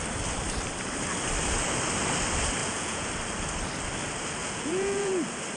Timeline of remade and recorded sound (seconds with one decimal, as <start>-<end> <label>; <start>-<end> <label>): 0.0-2.6 recorded; 2.6-3.1 remade; 3.1-4.4 recorded; 4.4-5.1 remade; 5.1-5.6 recorded